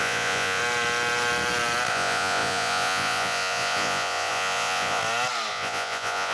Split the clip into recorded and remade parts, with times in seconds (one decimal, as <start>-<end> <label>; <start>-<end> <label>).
0.0-0.6 remade; 0.6-1.9 recorded; 1.9-5.0 remade; 5.0-5.5 recorded; 5.5-6.3 remade